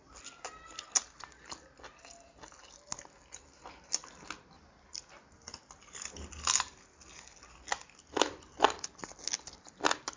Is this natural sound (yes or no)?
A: yes